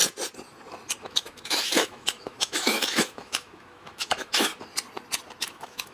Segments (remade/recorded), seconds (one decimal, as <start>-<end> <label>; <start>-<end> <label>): 0.0-1.0 recorded; 1.0-4.5 remade; 4.5-5.4 recorded; 5.4-5.9 remade